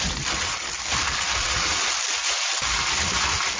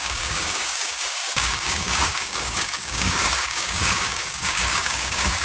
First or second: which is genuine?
first